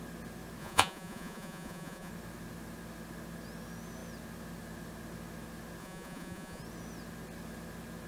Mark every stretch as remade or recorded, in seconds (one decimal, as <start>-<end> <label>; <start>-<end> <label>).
0.0-0.6 recorded; 0.6-2.1 remade; 2.1-5.8 recorded; 5.8-6.6 remade; 6.6-8.1 recorded